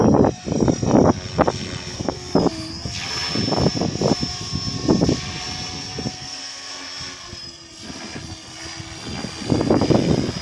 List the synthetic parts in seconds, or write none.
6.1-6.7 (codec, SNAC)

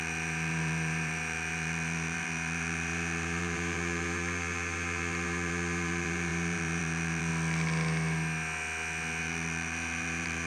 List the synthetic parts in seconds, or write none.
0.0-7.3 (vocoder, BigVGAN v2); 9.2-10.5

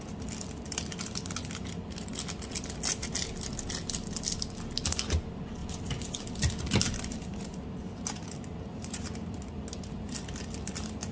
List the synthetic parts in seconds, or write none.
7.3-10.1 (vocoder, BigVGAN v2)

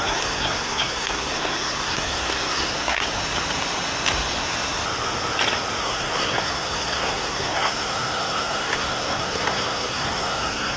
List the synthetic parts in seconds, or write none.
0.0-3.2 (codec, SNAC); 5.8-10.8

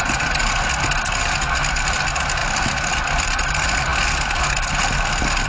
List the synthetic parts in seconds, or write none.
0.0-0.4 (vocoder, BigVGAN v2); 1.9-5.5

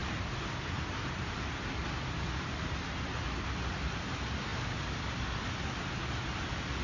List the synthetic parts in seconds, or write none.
0.0-3.0 (vocoder, BigVGAN v2)

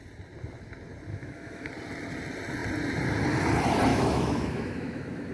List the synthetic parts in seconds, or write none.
1.1-1.7 (autoencoder, DAC-VAE); 3.9-5.3

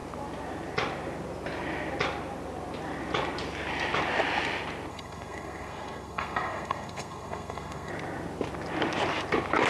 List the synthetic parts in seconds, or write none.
4.9-7.9 (codec, SNAC)